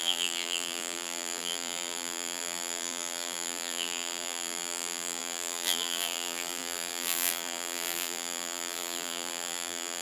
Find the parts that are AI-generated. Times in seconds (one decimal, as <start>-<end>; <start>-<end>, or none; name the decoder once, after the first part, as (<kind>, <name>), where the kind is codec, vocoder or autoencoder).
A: 0.0-10.0 (vocoder, BigVGAN v2)